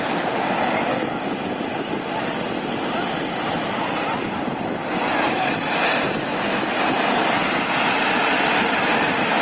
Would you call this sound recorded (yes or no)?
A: yes